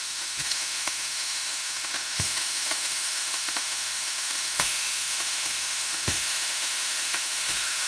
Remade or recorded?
remade